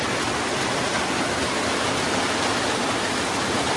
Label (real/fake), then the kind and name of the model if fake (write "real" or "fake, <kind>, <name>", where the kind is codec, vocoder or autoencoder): real